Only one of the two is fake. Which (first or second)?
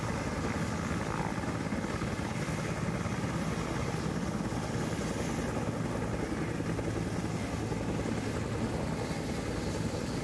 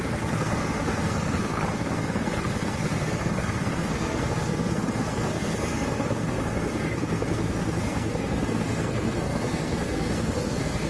second